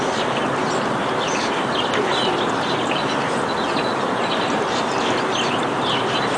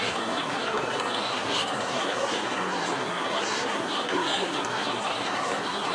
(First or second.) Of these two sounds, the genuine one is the first